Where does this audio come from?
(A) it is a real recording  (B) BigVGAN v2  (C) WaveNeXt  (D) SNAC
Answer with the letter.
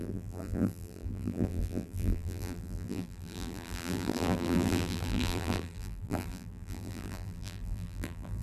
B